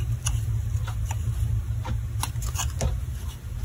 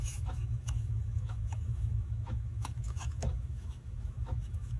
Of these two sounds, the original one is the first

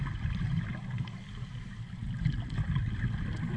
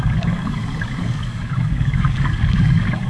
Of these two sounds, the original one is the first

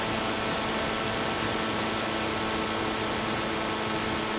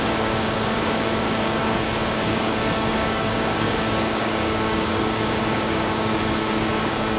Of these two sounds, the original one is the first